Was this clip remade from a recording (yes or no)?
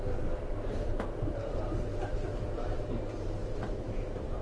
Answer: yes